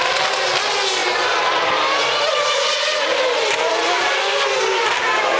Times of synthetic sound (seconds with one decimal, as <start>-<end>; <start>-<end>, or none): 1.0-4.2